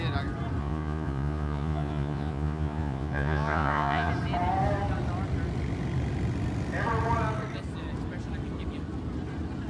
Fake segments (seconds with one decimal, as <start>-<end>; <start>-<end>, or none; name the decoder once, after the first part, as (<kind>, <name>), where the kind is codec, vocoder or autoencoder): 0.6-4.1 (vocoder, Vocos)

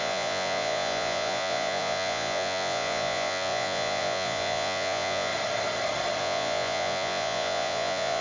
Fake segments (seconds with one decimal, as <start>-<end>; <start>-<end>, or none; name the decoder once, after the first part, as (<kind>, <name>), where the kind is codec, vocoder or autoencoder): 0.0-5.3 (vocoder, Vocos); 6.2-8.2

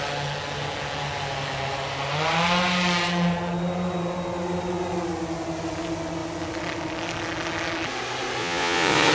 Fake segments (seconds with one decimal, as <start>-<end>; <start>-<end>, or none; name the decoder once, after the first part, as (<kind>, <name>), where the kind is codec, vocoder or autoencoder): 8.4-9.1 (vocoder, Vocos)

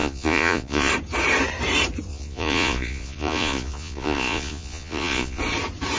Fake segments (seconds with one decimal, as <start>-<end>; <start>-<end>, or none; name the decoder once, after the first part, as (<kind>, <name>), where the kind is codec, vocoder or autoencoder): 0.0-0.9 (vocoder, Vocos); 2.1-5.4

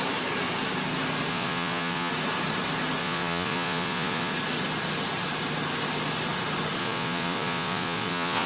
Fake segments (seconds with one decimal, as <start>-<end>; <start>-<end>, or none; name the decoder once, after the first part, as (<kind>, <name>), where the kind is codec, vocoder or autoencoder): 1.3-2.1 (vocoder, Vocos); 3.0-4.3; 6.8-8.5